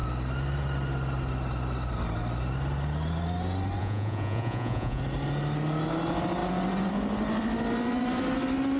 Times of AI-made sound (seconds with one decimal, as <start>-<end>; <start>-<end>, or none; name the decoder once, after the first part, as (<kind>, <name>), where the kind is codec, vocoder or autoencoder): 3.8-5.0 (vocoder, Vocos)